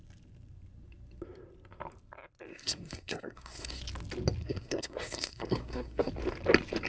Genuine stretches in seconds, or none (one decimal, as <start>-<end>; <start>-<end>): 0.0-2.5; 3.8-4.4; 6.1-6.9